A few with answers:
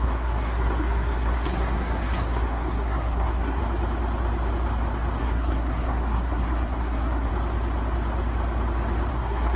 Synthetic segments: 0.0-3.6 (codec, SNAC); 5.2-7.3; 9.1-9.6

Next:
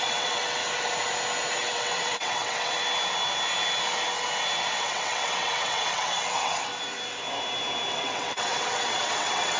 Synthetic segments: 0.0-0.6 (vocoder, WaveNeXt); 1.6-2.8; 4.7-6.7; 7.9-9.6

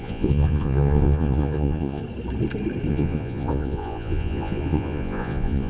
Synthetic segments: 0.0-2.0 (vocoder, Vocos); 2.9-5.7

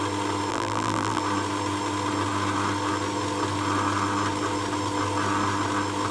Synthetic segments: 0.5-1.2 (vocoder, BigVGAN v2)

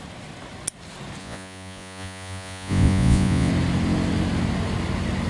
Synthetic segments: 1.2-3.5 (vocoder, Vocos)

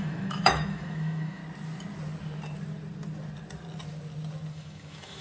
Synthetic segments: 0.0-1.4 (autoencoder, DAC-VAE); 4.5-5.2

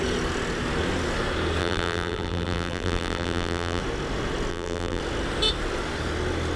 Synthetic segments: 1.6-3.8 (vocoder, BigVGAN v2); 4.5-5.0

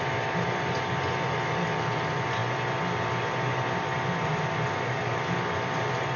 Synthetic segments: none